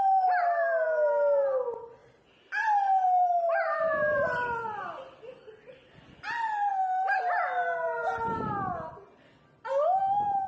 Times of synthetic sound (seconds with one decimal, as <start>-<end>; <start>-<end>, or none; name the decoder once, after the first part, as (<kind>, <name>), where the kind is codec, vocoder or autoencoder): none